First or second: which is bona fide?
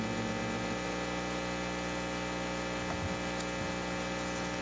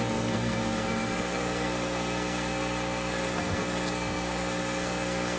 first